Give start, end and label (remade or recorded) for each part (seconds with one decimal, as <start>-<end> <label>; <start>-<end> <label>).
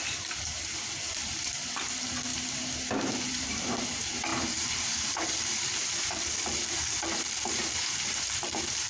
0.0-8.9 remade